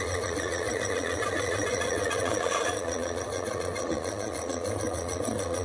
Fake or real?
fake